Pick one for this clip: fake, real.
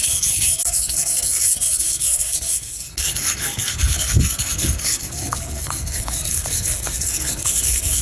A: fake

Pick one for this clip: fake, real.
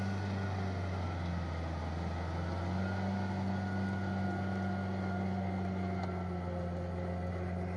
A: real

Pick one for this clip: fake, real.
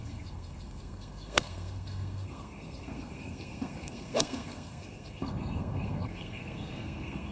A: fake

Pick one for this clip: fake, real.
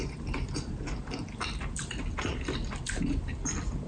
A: real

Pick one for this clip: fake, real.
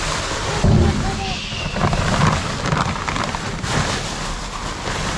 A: real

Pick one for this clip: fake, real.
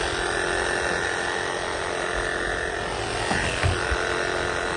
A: real